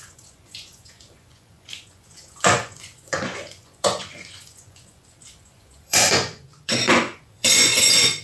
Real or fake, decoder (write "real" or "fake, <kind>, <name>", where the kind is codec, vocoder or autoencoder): fake, vocoder, Vocos